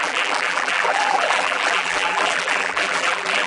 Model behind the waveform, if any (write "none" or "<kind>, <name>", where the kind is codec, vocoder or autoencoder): vocoder, BigVGAN v2